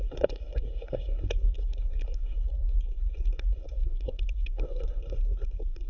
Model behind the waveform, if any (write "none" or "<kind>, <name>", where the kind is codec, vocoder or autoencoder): codec, SNAC